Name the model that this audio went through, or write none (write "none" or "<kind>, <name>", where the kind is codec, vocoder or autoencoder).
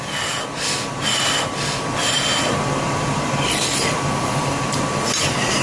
none